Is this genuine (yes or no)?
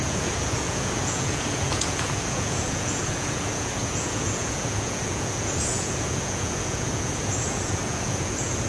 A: no